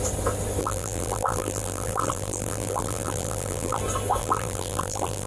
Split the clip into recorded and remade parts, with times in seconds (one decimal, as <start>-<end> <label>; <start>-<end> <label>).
0.0-0.6 recorded; 0.6-3.8 remade; 3.8-4.2 recorded; 4.2-5.3 remade